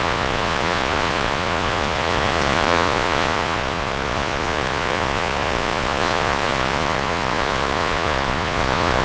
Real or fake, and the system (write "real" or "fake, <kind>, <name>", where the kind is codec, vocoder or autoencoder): fake, vocoder, Vocos